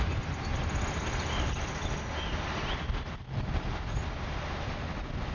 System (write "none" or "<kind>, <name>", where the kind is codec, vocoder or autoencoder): none